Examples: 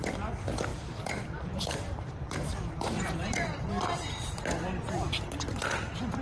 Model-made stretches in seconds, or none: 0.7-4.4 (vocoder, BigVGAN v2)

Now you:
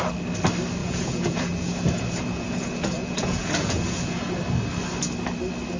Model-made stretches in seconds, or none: 0.8-4.3 (vocoder, Vocos)

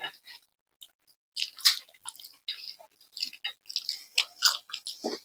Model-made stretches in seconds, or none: none

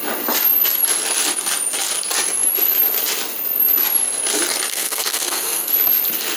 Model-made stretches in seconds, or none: 4.7-5.7 (codec, SNAC)

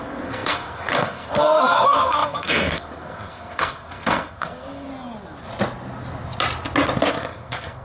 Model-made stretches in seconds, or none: 0.0-4.9 (codec, SNAC); 7.1-7.8

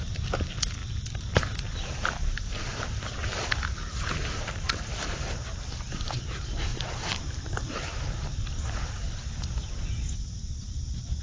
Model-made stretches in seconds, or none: 0.8-2.6 (vocoder, BigVGAN v2); 3.8-4.9; 6.7-9.3

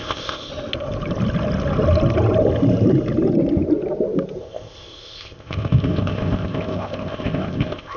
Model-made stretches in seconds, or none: 0.0-0.5 (codec, ZipCodec); 4.4-8.0